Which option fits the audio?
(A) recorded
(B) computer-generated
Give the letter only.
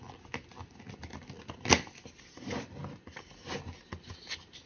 A